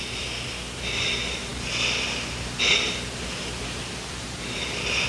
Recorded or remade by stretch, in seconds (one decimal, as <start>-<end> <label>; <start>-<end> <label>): 0.0-5.1 recorded